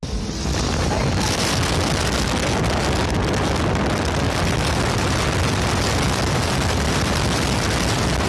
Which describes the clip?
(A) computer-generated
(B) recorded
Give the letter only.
B